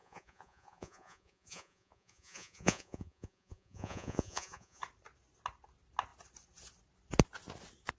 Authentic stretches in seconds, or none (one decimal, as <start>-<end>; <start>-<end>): 4.8-8.0